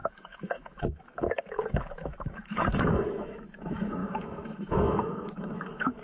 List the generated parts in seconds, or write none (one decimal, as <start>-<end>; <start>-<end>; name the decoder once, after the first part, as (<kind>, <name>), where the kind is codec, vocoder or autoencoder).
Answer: 0.0-6.0 (autoencoder, DAC-VAE)